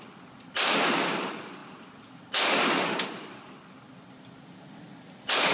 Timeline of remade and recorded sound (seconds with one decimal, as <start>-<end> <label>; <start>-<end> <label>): 0.0-5.5 recorded